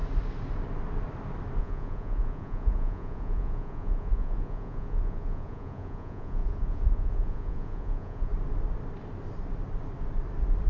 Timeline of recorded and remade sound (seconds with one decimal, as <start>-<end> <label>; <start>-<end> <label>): 0.0-1.6 recorded; 1.6-8.3 remade; 8.3-10.7 recorded